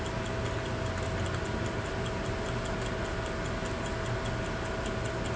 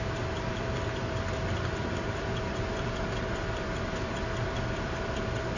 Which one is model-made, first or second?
second